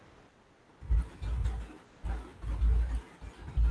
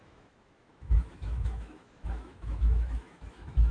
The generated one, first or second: second